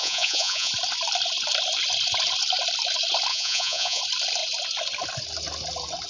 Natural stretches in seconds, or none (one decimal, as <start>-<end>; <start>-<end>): 0.7-3.3; 4.0-6.1